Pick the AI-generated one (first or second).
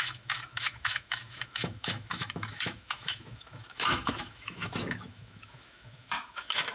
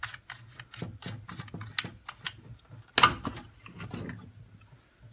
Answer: first